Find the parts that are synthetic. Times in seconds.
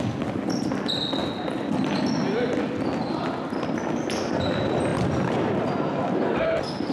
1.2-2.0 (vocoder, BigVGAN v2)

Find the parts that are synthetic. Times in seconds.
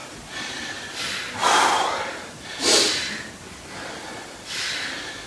0.0-0.8 (vocoder, BigVGAN v2); 1.4-4.6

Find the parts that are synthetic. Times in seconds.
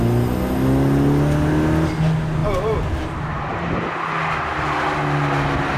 2.4-3.7 (vocoder, BigVGAN v2)